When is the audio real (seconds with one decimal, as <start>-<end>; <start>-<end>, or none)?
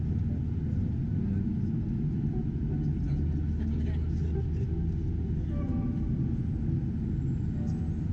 0.0-8.1